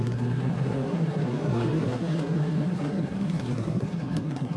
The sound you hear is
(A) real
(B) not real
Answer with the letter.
B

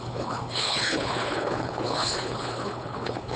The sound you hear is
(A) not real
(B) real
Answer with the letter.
A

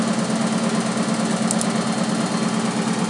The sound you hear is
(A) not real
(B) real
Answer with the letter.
B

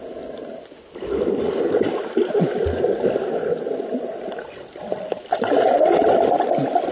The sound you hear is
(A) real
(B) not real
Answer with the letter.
A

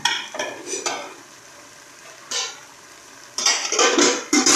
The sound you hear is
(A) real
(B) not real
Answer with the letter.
A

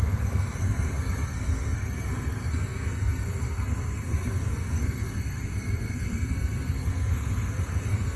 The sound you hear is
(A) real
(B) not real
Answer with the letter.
B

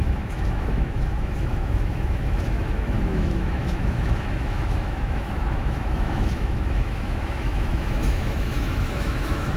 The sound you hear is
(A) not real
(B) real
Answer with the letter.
A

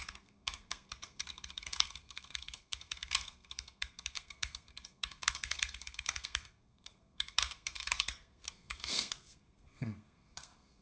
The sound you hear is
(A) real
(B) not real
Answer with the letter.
B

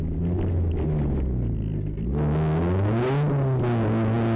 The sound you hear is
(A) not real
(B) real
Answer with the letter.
B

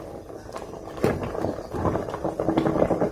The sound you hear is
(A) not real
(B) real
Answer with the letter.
B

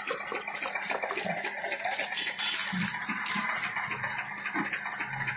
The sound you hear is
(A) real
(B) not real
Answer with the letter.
A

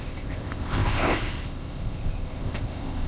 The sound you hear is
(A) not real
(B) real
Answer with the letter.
A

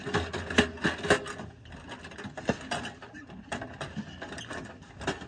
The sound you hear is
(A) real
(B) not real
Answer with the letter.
A